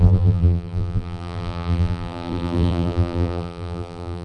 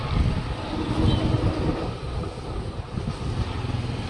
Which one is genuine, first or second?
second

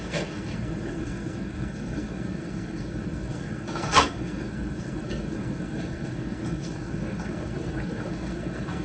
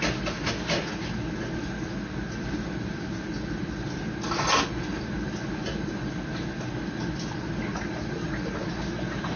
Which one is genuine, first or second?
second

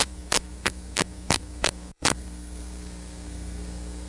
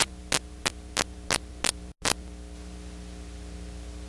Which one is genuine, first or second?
second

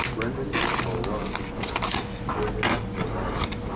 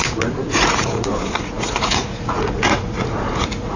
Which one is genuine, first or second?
first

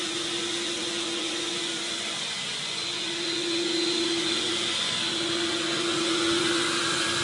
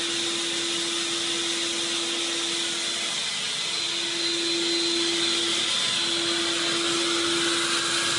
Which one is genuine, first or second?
second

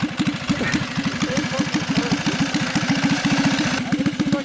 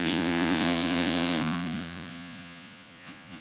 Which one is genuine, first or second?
first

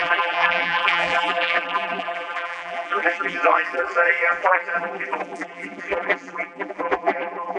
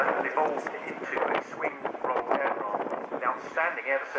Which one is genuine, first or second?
second